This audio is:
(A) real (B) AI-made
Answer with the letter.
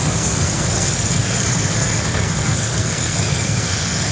B